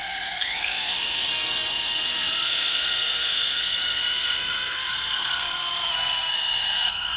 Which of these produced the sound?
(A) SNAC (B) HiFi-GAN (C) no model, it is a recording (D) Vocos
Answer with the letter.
A